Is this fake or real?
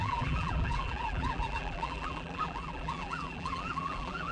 fake